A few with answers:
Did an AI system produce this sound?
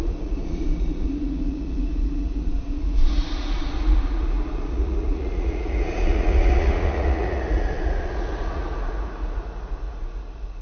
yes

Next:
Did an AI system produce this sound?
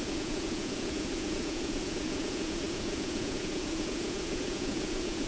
yes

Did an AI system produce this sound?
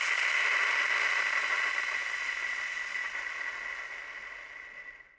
no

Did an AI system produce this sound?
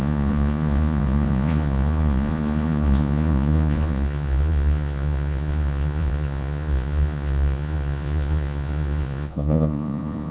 yes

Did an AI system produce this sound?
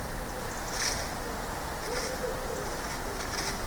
no